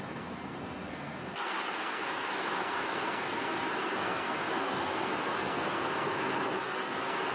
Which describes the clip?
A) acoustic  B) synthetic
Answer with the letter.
B